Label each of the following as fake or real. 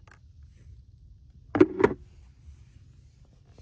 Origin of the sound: real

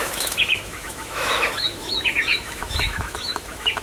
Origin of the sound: fake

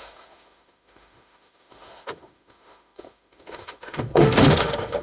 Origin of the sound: fake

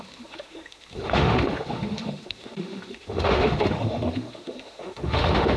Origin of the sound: fake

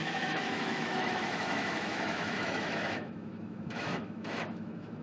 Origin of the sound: fake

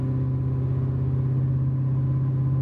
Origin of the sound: real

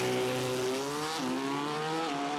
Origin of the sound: real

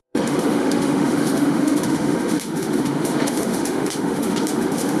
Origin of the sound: fake